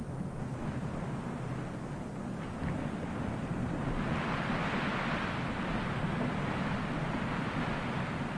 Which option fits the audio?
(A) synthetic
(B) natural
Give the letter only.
B